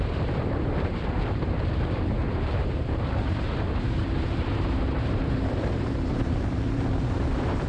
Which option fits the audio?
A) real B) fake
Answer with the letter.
B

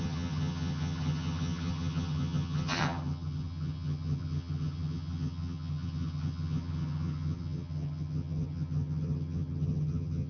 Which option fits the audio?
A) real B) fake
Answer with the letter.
B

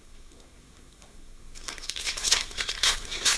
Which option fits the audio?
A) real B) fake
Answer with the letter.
B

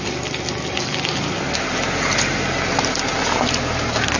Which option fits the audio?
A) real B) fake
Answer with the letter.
A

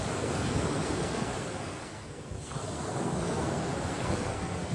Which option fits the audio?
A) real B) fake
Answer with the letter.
B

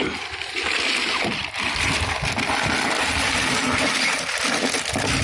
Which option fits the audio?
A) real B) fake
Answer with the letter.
A